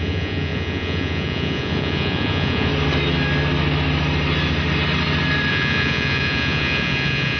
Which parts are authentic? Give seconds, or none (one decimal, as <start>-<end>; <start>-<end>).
2.7-5.5